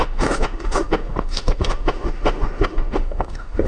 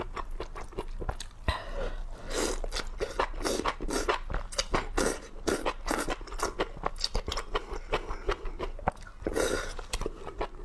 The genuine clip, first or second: second